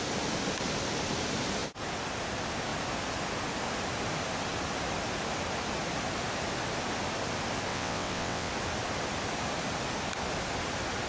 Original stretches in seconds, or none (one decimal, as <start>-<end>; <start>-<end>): 0.0-7.7; 8.5-11.1